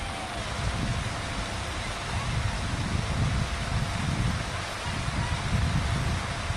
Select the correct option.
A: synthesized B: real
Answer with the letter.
B